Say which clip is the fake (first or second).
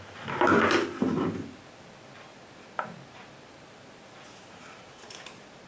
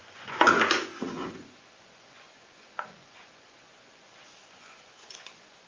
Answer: second